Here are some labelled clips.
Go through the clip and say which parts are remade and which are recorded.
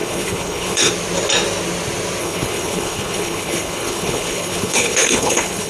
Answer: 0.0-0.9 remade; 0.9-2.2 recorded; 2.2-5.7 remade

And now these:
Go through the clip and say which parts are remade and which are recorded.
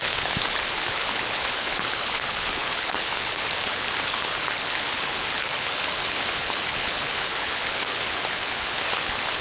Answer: 0.0-9.4 remade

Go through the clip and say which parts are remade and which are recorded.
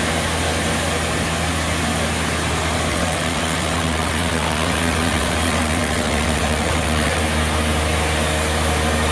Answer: 0.0-2.9 recorded; 2.9-7.2 remade; 7.2-9.1 recorded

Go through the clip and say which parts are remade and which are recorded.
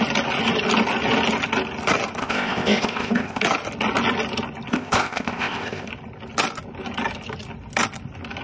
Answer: 0.0-2.2 recorded; 2.2-3.4 remade; 3.4-4.7 recorded; 4.7-5.9 remade; 5.9-8.4 recorded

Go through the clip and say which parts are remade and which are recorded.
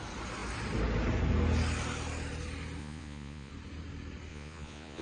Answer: 0.0-2.8 recorded; 2.8-3.5 remade; 3.5-4.3 recorded; 4.3-5.0 remade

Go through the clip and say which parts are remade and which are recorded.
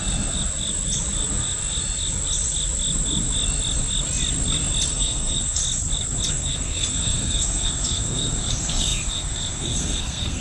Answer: 0.0-4.9 recorded; 4.9-5.6 remade; 5.6-6.3 recorded; 6.3-10.4 remade